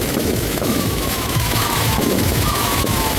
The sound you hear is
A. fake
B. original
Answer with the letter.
A